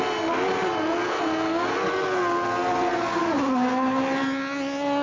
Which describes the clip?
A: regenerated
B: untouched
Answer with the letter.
B